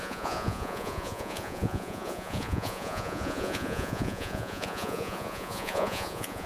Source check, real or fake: fake